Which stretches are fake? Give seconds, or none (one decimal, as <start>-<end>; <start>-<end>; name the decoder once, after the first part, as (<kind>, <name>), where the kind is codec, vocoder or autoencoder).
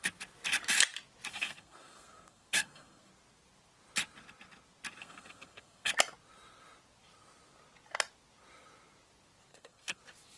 1.3-3.1 (codec, SNAC); 5.0-5.9; 9.5-10.0